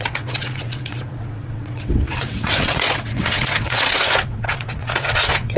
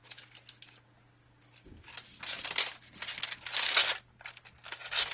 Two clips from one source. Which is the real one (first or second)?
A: second